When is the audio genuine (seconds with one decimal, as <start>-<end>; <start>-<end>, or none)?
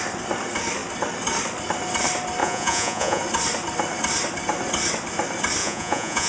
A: 0.0-2.4; 3.2-5.6